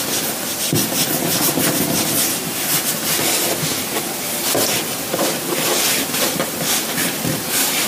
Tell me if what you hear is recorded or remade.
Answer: recorded